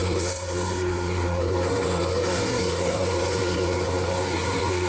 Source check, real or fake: fake